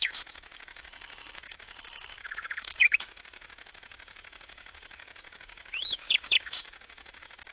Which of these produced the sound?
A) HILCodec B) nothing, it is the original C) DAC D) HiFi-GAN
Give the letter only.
C